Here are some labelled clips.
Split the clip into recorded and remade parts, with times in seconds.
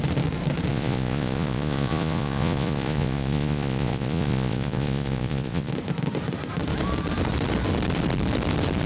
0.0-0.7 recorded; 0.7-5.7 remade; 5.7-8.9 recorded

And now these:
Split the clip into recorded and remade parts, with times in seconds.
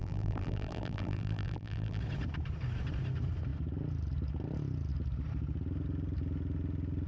0.0-2.0 remade; 2.0-7.1 recorded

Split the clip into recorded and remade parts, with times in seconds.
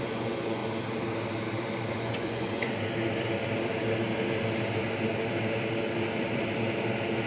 0.0-0.6 remade; 0.6-1.9 recorded; 1.9-2.7 remade; 2.7-7.3 recorded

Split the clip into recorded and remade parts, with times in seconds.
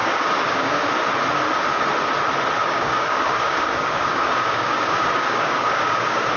0.0-0.9 remade; 0.9-2.6 recorded; 2.6-6.4 remade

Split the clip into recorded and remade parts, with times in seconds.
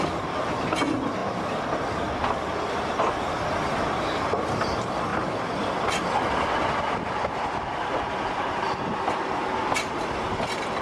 0.0-10.8 recorded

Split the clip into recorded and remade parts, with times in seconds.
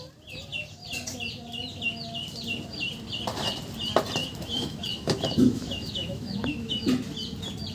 0.0-4.2 recorded; 4.2-6.9 remade; 6.9-7.7 recorded